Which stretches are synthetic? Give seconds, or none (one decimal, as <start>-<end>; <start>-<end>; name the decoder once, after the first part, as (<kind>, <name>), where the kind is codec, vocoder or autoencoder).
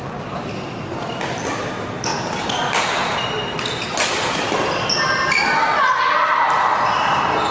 none